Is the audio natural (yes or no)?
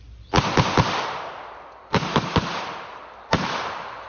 no